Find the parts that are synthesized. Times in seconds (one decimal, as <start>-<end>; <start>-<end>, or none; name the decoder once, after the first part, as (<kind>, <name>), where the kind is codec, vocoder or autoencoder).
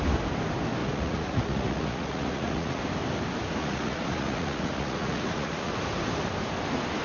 0.8-2.8 (vocoder, Vocos); 3.6-5.7